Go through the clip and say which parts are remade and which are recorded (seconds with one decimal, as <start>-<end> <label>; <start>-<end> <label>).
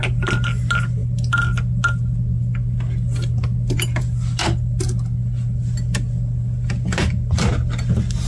0.0-8.3 recorded